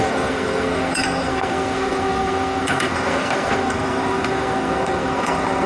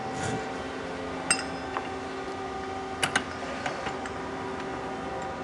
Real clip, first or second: second